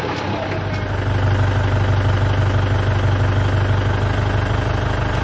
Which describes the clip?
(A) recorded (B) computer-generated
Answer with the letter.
A